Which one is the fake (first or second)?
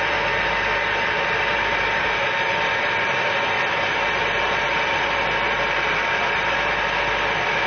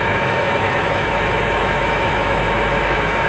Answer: second